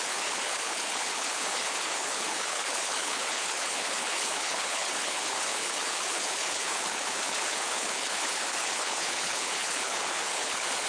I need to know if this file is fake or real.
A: fake